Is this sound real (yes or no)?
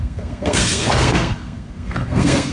no